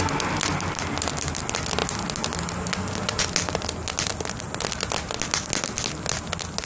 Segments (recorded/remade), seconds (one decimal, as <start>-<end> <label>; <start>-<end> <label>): 0.0-6.7 recorded